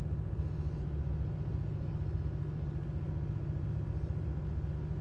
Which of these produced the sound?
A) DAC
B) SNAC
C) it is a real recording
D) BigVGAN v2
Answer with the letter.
C